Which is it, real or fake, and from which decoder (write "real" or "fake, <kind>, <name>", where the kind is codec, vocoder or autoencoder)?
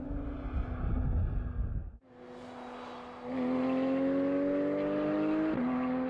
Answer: real